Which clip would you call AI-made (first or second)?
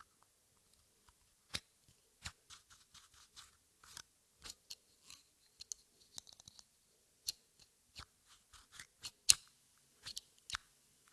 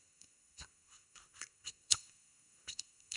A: second